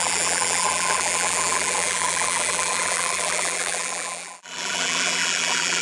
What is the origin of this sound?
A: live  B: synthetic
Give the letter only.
B